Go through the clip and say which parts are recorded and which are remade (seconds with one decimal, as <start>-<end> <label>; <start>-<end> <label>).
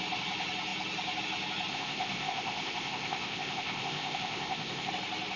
0.0-1.7 recorded; 1.7-4.9 remade; 4.9-5.4 recorded